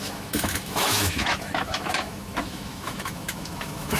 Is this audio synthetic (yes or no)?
yes